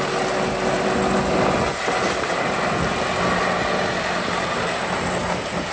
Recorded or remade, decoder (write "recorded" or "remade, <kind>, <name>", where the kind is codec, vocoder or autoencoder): recorded